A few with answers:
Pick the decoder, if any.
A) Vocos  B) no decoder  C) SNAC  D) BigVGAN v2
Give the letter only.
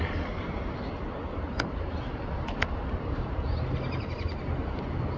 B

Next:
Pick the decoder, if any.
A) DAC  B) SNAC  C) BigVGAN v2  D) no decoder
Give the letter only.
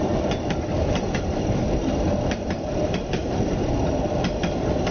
D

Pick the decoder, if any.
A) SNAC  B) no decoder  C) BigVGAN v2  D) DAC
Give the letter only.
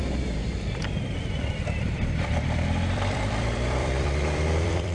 C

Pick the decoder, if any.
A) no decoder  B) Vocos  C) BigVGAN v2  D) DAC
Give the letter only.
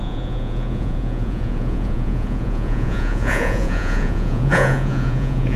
B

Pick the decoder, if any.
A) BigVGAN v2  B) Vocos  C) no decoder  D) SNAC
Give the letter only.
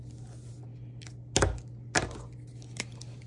C